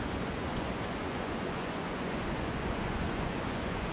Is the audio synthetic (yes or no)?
yes